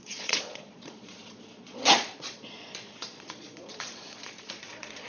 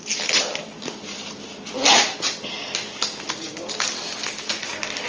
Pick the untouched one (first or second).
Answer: second